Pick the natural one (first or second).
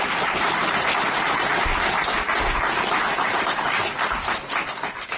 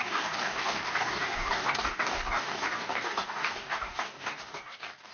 first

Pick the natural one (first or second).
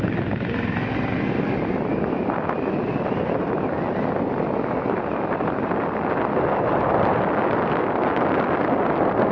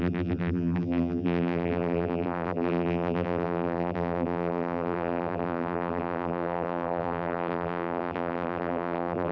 first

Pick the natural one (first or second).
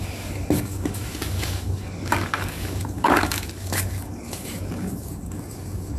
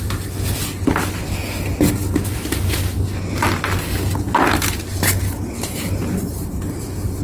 second